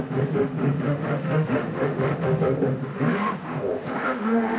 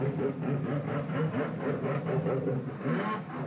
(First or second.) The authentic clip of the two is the second